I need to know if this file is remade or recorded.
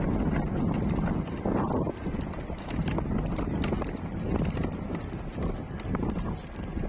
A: recorded